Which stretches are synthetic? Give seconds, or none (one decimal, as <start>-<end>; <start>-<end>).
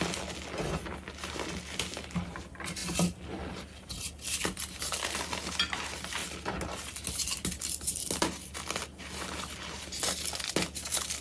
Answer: none